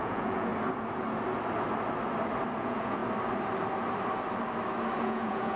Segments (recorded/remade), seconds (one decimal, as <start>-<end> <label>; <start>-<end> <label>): 0.0-0.5 remade; 0.5-2.6 recorded; 2.6-3.0 remade; 3.0-5.0 recorded; 5.0-5.6 remade